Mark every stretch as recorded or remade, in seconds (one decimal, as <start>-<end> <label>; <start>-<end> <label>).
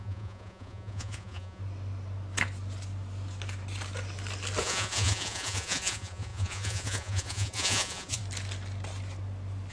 0.0-1.6 remade; 1.6-4.6 recorded; 4.6-8.2 remade; 8.2-9.7 recorded